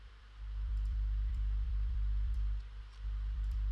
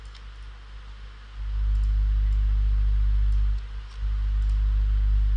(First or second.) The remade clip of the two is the first